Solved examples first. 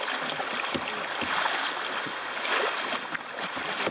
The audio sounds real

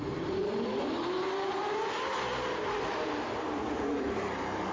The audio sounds fake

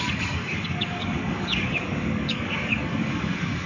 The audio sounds fake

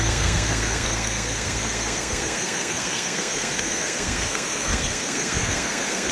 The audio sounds fake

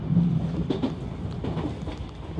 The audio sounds real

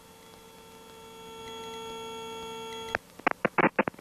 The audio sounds real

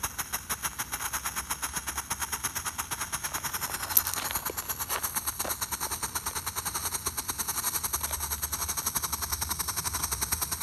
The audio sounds real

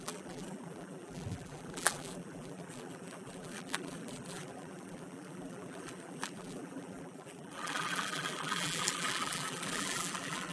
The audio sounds fake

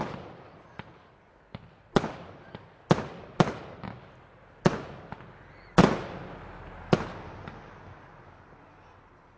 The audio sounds real